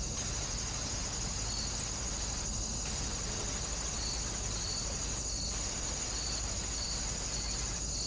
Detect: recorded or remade recorded